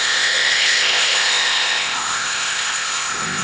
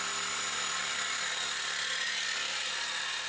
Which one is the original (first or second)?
second